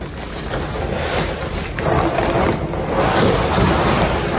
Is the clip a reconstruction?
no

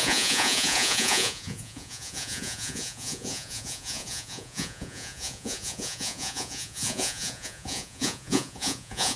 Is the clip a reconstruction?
yes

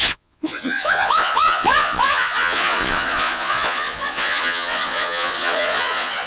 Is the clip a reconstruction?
yes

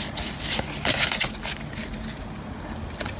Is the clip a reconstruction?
no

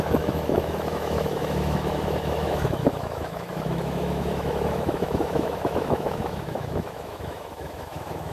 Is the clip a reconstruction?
yes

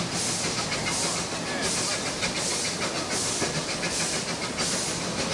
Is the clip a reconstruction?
no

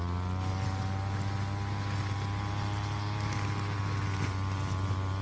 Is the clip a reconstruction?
no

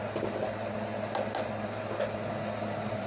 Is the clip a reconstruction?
no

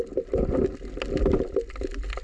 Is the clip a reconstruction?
no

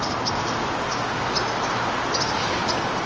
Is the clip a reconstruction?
no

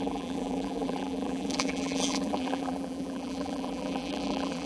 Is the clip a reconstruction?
yes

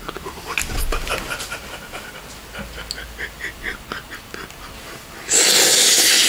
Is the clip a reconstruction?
no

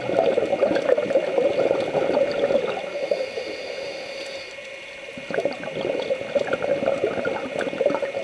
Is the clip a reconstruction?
no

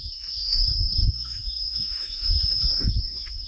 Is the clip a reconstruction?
yes